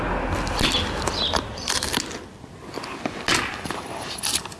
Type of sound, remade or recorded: recorded